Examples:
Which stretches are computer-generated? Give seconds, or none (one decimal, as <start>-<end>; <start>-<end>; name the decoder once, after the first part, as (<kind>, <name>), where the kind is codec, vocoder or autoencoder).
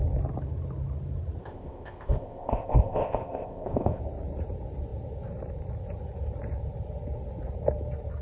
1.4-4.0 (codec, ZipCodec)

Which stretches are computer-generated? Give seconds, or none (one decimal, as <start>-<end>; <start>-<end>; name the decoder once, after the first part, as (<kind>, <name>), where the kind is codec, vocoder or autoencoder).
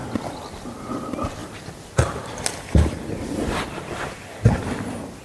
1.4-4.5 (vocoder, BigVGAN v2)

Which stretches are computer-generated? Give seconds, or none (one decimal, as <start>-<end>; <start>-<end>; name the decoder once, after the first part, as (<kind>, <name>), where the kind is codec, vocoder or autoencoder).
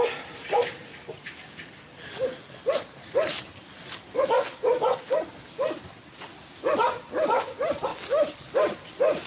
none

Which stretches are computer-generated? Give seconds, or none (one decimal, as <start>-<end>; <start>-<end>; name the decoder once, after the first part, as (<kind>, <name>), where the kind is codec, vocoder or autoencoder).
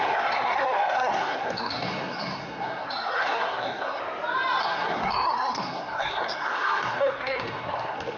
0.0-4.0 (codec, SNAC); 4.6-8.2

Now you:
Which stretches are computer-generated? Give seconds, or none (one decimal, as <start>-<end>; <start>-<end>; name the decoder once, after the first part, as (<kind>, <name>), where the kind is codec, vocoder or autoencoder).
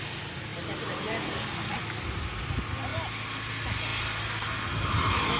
none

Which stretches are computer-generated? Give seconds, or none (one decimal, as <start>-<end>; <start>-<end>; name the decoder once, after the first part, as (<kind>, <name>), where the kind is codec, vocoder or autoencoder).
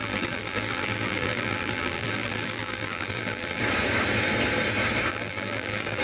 0.0-3.6 (vocoder, BigVGAN v2); 5.1-6.0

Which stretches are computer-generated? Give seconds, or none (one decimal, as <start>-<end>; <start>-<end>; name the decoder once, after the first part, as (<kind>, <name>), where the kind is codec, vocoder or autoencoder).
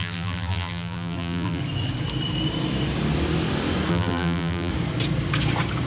0.0-1.6 (vocoder, BigVGAN v2); 3.9-4.7